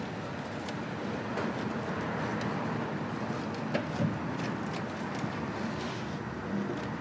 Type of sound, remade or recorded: recorded